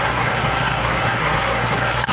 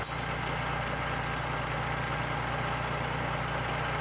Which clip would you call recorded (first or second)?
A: second